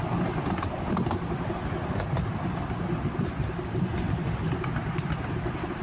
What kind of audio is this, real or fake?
real